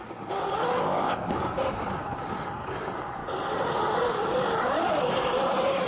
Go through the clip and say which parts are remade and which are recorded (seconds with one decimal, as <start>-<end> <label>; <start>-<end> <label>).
0.0-0.8 recorded; 0.8-1.3 remade; 1.3-5.9 recorded